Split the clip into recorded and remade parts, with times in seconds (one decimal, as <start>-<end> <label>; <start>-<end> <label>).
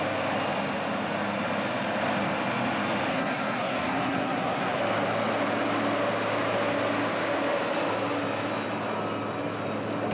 0.0-3.1 recorded; 3.1-4.8 remade; 4.8-10.1 recorded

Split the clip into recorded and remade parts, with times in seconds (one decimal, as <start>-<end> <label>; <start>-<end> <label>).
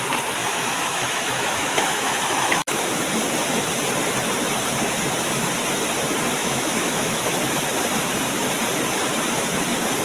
0.0-0.4 recorded; 0.4-3.0 remade; 3.0-6.4 recorded; 6.4-7.2 remade; 7.2-10.0 recorded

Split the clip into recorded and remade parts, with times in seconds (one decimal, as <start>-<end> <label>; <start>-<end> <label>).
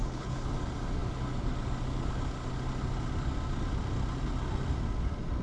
0.0-0.5 remade; 0.5-5.4 recorded